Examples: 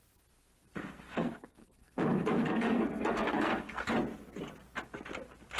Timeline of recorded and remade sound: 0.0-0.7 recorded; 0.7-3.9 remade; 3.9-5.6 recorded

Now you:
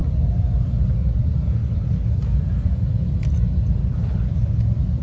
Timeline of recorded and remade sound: 0.0-1.6 recorded; 1.6-2.2 remade; 2.2-3.8 recorded; 3.8-4.6 remade; 4.6-5.0 recorded

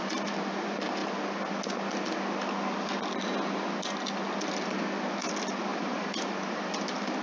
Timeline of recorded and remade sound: 0.0-1.0 remade; 1.0-5.3 recorded; 5.3-7.2 remade

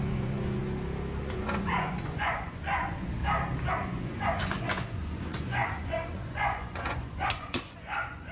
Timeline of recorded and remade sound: 0.0-0.6 remade; 0.6-1.2 recorded; 1.2-3.2 remade; 3.2-3.7 recorded; 3.7-8.3 remade

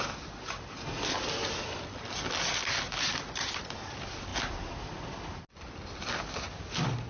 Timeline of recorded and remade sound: 0.0-7.1 recorded